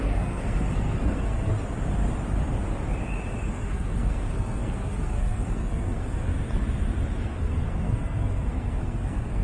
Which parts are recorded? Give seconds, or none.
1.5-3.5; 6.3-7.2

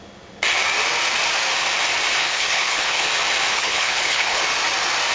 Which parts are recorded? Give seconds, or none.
0.0-2.2; 3.1-3.5; 4.4-5.1

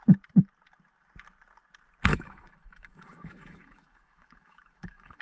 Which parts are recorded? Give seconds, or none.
0.0-2.1

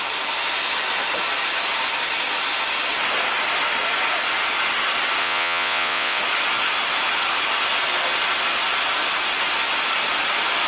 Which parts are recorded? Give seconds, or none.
0.0-5.2; 6.2-10.7

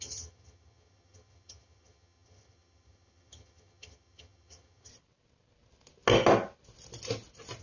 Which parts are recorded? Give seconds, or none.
4.9-7.6

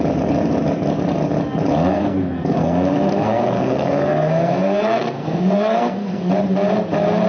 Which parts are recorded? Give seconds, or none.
0.0-1.9; 6.3-7.3

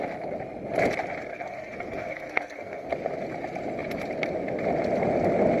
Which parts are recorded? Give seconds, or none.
0.0-1.3; 2.9-5.6